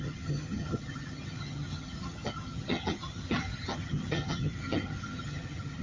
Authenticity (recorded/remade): remade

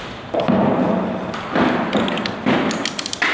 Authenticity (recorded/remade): recorded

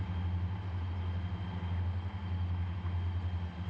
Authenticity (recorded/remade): recorded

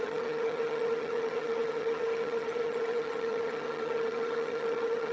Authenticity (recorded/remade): remade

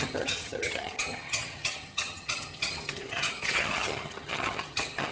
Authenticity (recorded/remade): remade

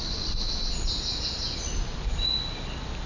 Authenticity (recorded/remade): recorded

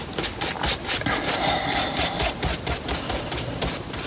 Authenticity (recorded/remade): recorded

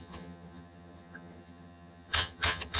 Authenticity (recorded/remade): remade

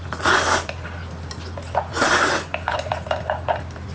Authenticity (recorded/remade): recorded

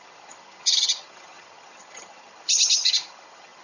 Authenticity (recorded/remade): remade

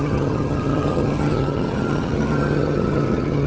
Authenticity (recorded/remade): remade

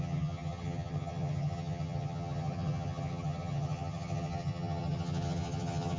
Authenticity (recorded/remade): remade